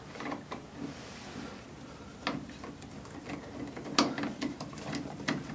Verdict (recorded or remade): recorded